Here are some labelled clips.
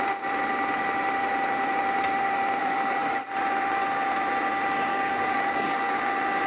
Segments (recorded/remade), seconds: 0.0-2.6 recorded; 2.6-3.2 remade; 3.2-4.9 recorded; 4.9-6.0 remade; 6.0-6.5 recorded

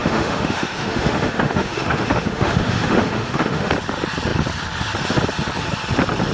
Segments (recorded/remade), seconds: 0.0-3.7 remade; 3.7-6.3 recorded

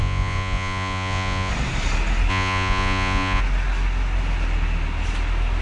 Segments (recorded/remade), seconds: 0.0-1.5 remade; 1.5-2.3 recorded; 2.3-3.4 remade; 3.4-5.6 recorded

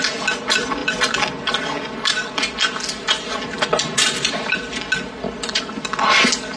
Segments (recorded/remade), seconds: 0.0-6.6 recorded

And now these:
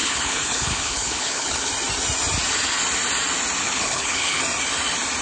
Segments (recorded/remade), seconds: 0.0-1.7 remade; 1.7-3.6 recorded; 3.6-4.4 remade; 4.4-5.2 recorded